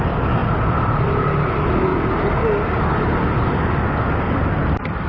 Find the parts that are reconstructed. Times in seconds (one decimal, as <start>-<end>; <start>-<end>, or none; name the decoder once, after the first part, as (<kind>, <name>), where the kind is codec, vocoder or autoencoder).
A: none